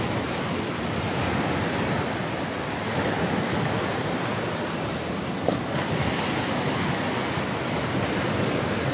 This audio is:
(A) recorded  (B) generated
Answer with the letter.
A